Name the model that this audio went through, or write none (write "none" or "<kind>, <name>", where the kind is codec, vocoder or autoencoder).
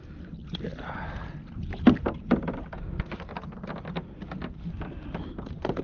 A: none